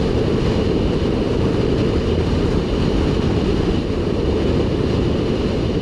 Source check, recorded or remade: recorded